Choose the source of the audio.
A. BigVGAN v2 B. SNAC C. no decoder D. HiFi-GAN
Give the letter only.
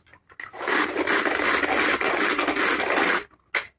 C